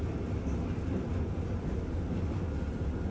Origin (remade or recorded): recorded